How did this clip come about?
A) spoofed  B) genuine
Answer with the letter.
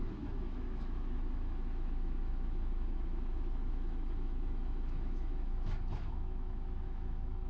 A